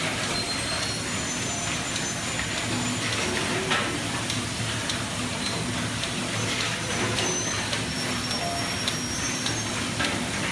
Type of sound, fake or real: real